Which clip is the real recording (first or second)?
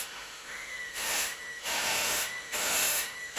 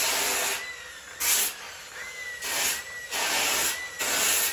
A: second